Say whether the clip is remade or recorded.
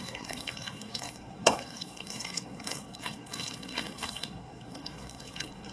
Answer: remade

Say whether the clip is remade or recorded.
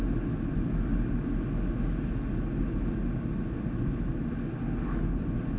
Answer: recorded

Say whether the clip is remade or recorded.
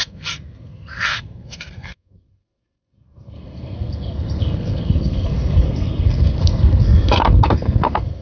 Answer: remade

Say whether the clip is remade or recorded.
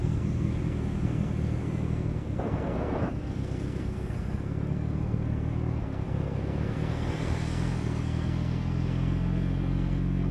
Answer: remade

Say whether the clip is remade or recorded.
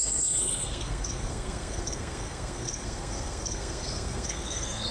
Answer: remade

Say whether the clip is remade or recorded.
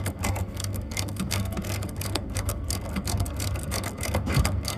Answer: remade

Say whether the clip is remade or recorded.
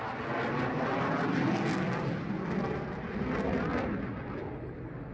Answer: recorded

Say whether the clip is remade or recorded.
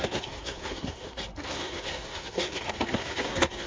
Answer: remade